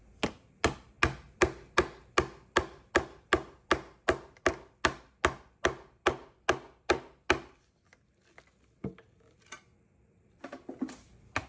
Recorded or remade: recorded